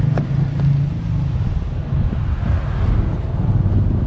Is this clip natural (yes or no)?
yes